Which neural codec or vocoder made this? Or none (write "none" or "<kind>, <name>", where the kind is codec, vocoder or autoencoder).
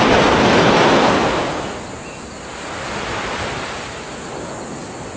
none